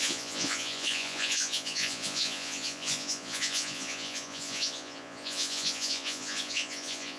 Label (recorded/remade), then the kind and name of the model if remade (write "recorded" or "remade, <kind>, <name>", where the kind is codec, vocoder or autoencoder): remade, vocoder, Vocos